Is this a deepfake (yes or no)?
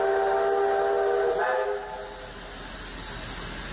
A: no